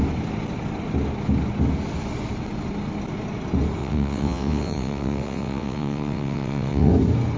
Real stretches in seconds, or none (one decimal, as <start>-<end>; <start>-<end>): 0.0-3.8; 6.9-7.4